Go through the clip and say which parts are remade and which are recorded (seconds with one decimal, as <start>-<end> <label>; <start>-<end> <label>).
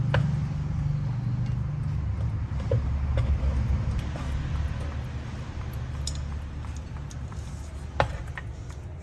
0.0-9.0 recorded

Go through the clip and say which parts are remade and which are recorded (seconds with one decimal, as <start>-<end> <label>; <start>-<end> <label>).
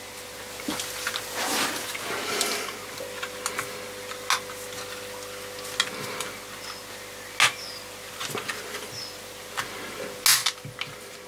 0.0-11.3 recorded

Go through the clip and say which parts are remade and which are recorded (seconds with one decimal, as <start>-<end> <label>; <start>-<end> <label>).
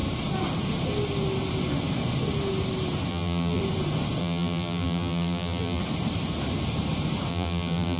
0.0-3.1 recorded; 3.1-3.6 remade; 3.6-4.2 recorded; 4.2-5.8 remade; 5.8-7.3 recorded; 7.3-8.0 remade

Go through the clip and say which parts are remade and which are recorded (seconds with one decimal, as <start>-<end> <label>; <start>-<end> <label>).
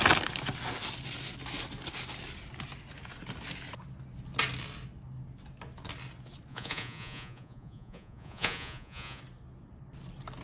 0.0-6.5 recorded; 6.5-9.2 remade; 9.2-10.4 recorded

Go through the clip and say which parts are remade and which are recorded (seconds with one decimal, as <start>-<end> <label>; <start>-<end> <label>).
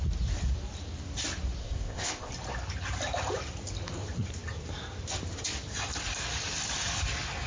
0.0-1.6 recorded; 1.6-2.3 remade; 2.3-7.5 recorded